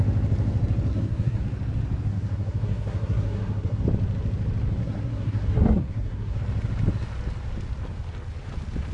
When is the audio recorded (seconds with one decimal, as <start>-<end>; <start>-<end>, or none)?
0.0-0.9; 1.4-2.1; 3.8-4.8; 6.4-8.9